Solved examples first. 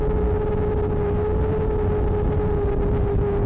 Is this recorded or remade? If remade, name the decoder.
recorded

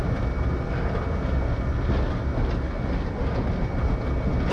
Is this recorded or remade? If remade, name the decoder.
recorded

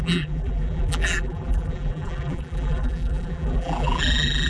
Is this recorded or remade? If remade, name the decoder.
remade, vocoder, BigVGAN v2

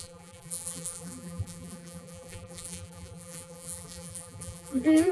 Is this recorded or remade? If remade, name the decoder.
remade, vocoder, BigVGAN v2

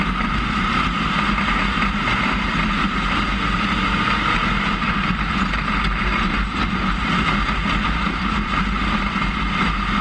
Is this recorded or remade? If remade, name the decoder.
remade, vocoder, BigVGAN v2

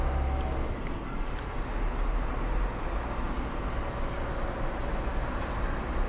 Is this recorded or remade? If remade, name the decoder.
recorded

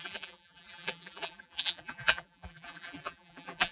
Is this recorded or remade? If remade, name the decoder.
remade, vocoder, BigVGAN v2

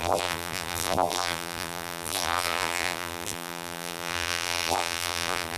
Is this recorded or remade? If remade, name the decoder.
remade, vocoder, BigVGAN v2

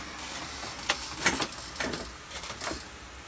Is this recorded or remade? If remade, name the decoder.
recorded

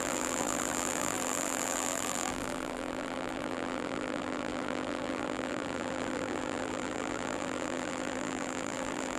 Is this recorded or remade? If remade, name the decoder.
remade, vocoder, BigVGAN v2